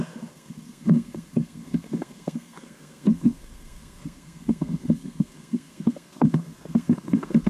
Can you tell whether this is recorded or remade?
remade